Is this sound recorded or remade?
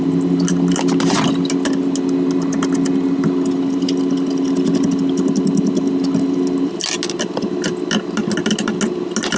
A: recorded